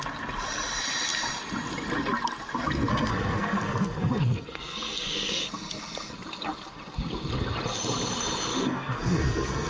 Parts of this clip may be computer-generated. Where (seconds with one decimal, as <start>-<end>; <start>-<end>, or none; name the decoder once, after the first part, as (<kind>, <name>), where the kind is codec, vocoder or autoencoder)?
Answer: 2.9-5.4 (codec, SNAC); 8.5-9.7